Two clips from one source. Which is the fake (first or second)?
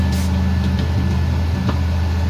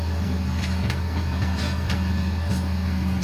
second